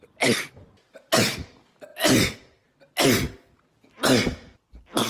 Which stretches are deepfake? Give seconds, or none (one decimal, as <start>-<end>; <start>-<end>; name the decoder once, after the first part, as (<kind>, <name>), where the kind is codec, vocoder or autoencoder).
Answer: none